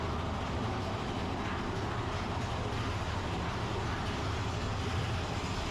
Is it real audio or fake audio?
real